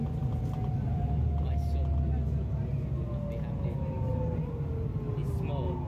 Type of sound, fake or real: real